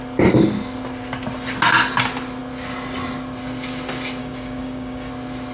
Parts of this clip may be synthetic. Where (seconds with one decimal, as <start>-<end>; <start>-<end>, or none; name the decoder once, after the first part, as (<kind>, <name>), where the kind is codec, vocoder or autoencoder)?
4.2-5.1 (codec, DAC)

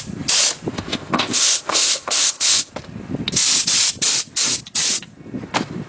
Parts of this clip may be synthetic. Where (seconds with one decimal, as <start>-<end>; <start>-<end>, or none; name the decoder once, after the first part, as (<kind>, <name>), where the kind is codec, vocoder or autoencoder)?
0.7-2.7 (codec, ZipCodec)

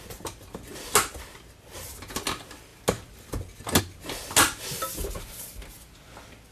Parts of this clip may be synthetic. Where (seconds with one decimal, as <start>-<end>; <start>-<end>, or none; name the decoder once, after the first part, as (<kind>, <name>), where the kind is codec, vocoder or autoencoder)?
none